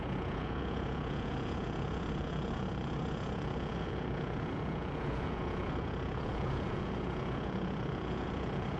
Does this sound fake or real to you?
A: fake